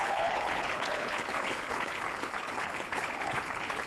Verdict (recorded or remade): remade